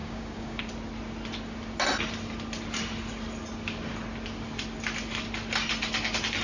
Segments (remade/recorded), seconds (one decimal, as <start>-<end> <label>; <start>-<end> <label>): 0.0-0.6 remade; 0.6-6.4 recorded